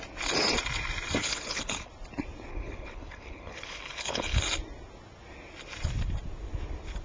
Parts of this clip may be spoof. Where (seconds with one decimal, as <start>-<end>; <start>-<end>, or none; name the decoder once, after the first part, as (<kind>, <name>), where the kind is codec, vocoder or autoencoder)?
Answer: 1.2-1.9 (codec, HILCodec); 2.5-4.4